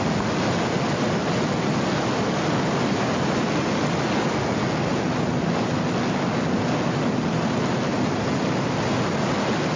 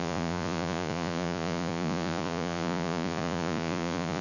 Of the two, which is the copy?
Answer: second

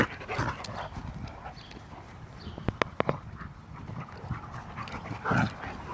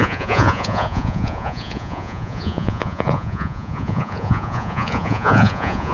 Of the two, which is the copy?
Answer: second